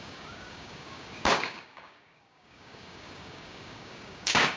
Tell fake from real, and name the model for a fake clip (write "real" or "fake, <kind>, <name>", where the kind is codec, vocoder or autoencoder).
fake, codec, DAC